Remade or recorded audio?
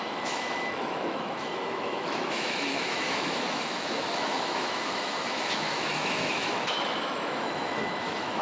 remade